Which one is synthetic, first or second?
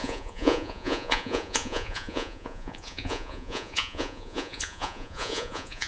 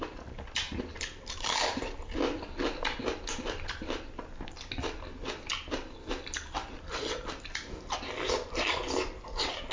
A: first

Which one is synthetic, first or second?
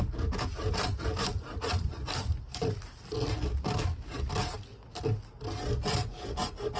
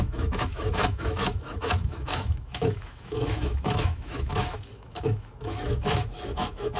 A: second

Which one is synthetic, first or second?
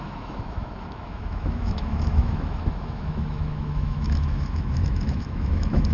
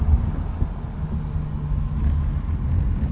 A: first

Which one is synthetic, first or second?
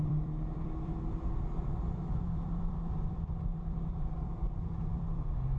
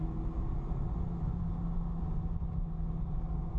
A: first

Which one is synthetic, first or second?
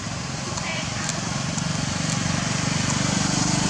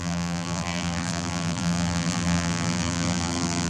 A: second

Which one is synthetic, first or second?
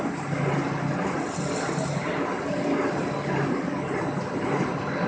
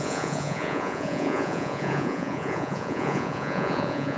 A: second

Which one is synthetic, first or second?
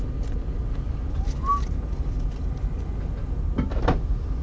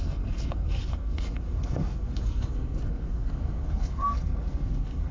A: second